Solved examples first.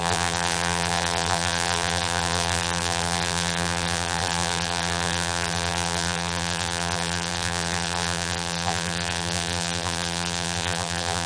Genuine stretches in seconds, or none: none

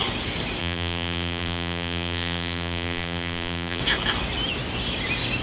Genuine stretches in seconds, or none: 0.0-0.6; 3.8-5.4